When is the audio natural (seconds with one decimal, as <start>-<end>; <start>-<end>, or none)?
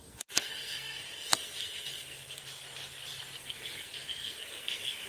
2.4-3.4